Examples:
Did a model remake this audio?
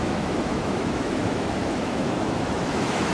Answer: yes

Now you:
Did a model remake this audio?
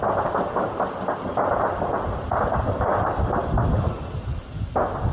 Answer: no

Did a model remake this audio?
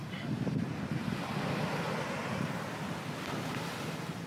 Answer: no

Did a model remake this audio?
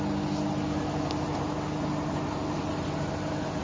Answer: no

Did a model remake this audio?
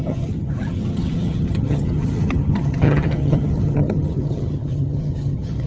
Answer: yes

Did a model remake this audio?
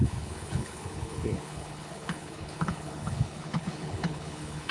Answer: yes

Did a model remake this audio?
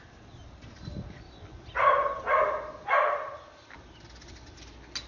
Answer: no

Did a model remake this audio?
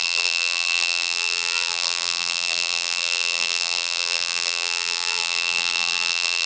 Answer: yes